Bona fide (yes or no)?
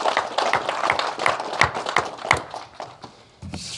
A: yes